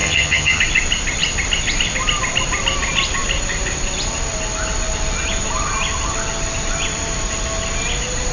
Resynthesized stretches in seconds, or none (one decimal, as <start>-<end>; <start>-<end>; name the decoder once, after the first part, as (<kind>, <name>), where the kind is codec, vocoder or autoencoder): 0.0-0.6 (vocoder, HiFi-GAN)